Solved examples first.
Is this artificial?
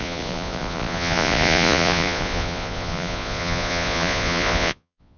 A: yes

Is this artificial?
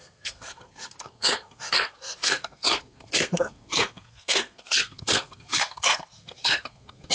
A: yes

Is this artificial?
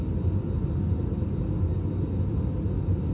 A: no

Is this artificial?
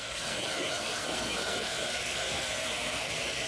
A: yes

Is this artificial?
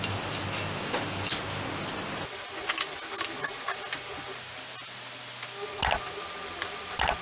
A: no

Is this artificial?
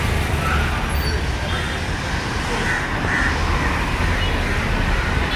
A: no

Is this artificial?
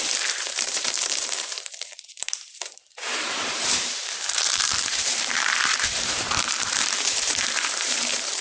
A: yes